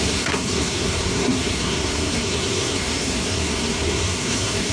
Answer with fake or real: fake